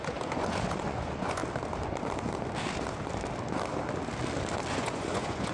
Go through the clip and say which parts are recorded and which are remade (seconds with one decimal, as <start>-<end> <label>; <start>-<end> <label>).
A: 0.0-1.4 remade; 1.4-4.7 recorded; 4.7-5.5 remade